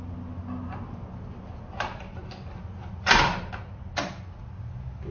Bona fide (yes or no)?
yes